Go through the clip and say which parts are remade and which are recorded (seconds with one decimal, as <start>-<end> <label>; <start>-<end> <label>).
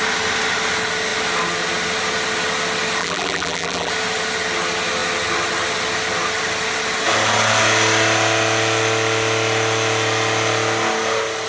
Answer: 0.0-3.0 recorded; 3.0-3.9 remade; 3.9-11.5 recorded